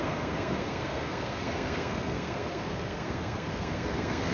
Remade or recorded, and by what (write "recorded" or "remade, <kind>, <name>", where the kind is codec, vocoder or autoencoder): remade, codec, SNAC